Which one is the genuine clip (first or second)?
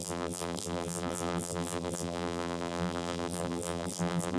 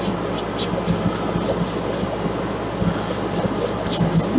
second